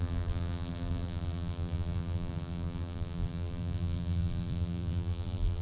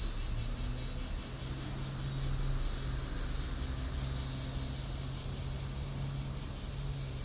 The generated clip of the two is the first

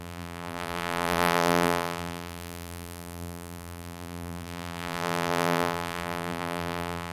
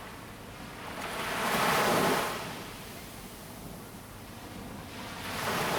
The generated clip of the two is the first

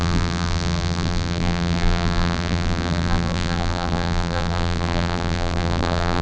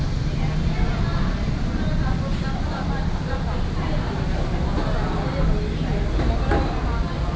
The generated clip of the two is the first